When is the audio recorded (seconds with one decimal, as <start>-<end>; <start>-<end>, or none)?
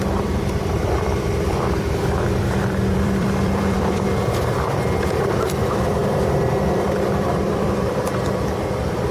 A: none